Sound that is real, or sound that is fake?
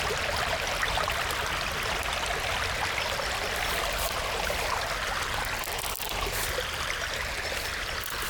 real